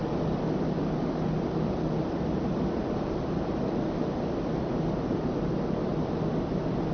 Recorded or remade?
recorded